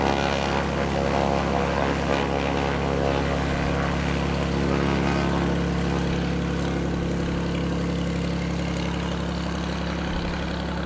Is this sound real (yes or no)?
yes